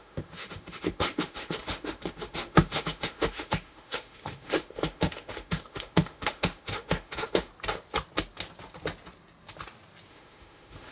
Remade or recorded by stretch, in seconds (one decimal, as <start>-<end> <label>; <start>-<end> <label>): 0.0-7.5 remade; 7.5-10.1 recorded; 10.1-10.9 remade